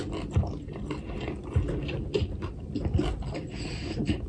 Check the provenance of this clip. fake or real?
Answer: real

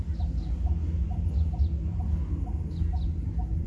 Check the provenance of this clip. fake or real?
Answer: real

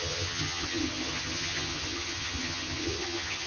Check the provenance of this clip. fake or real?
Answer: fake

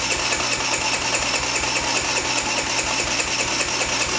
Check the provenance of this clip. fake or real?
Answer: real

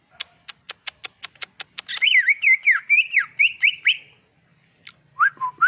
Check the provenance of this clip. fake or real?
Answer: real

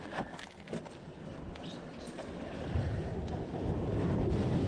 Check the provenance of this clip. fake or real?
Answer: real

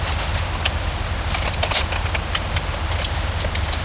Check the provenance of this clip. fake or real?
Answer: real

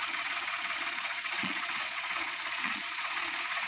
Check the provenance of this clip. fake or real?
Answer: fake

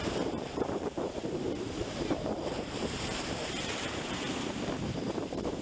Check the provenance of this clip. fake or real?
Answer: fake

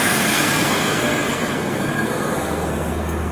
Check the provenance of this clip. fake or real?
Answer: fake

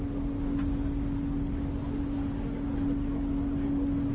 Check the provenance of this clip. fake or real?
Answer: real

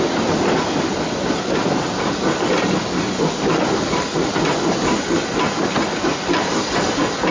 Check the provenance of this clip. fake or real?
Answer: real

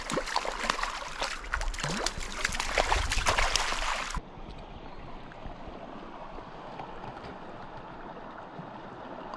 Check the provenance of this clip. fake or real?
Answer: real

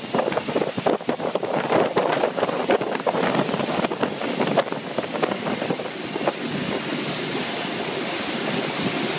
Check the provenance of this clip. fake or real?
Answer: real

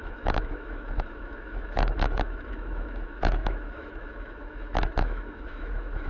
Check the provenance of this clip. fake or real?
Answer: fake